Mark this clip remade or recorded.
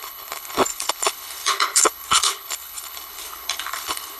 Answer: remade